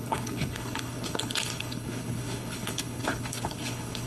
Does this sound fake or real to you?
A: fake